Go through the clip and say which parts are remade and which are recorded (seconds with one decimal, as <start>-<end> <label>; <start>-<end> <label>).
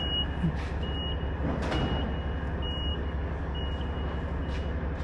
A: 0.0-2.9 recorded; 2.9-3.6 remade; 3.6-5.0 recorded